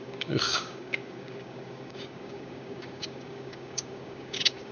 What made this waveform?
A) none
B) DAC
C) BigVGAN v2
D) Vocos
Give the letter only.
B